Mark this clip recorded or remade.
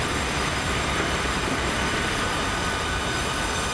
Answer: remade